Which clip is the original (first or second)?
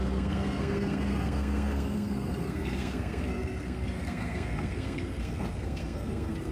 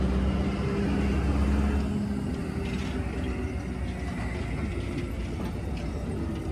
second